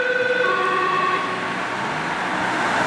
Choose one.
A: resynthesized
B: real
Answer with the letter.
B